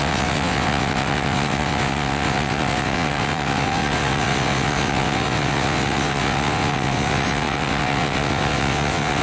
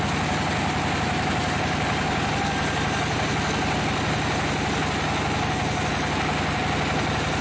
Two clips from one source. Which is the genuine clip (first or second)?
second